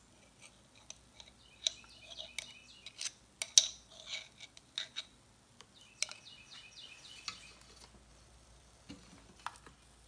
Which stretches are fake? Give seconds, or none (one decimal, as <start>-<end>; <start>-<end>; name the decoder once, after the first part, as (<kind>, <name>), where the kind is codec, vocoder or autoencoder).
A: 8.1-8.9 (vocoder, BigVGAN v2)